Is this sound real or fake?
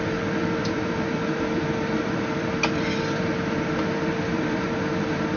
fake